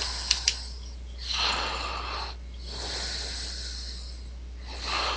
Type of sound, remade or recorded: recorded